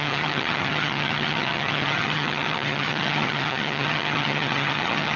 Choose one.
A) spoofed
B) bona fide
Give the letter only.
A